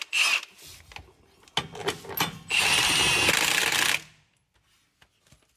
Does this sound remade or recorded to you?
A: recorded